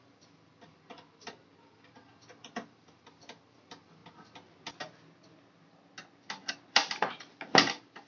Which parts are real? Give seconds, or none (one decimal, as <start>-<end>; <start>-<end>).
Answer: 4.0-6.5